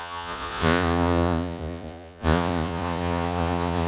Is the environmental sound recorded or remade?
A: remade